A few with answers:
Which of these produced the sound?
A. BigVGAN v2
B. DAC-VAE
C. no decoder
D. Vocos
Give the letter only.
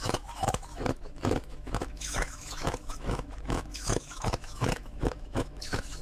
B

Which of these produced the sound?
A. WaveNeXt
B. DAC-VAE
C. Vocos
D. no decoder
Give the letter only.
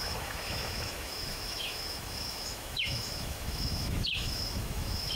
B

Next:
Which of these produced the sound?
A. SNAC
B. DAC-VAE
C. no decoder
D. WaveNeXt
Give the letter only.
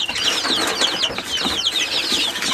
C